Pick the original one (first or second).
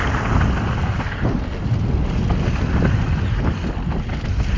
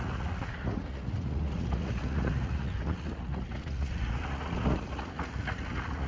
first